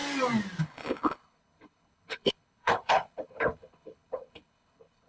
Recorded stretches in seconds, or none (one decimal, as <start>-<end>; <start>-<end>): 0.0-0.6